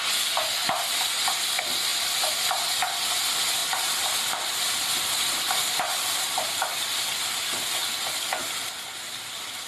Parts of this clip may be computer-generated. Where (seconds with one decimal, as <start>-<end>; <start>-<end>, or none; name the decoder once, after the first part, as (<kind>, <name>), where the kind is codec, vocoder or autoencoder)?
1.9-2.4 (vocoder, BigVGAN v2); 3.6-6.5